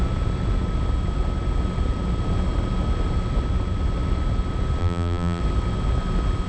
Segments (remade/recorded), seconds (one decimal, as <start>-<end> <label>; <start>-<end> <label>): 0.0-4.8 recorded; 4.8-5.4 remade; 5.4-6.5 recorded